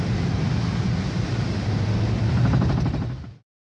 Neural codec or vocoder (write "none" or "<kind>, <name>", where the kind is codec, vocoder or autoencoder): none